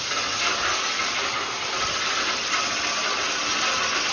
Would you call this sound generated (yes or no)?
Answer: no